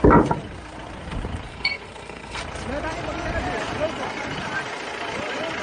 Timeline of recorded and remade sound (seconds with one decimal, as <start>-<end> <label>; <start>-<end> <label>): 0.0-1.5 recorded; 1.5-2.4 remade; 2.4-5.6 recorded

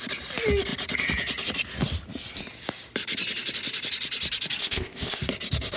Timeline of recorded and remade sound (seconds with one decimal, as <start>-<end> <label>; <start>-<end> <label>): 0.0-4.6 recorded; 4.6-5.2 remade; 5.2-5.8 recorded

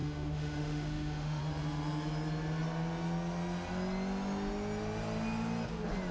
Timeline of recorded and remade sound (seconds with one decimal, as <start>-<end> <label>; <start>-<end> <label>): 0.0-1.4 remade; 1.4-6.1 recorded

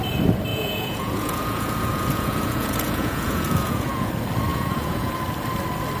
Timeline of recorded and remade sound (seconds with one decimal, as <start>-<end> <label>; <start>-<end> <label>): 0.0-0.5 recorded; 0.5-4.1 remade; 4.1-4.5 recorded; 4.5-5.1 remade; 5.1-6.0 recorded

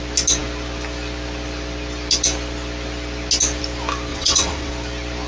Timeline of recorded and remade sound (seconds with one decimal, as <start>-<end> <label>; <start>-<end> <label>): 0.0-4.1 recorded; 4.1-4.7 remade; 4.7-5.3 recorded